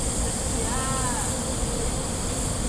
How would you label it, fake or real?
real